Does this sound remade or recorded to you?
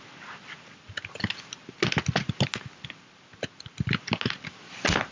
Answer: recorded